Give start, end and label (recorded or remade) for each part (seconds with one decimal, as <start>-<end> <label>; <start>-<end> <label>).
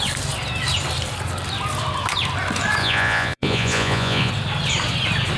0.0-2.8 recorded; 2.8-4.3 remade; 4.3-5.4 recorded